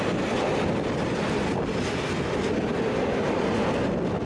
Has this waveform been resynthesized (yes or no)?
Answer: no